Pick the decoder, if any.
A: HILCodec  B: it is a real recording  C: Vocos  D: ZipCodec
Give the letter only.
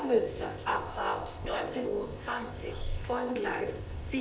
D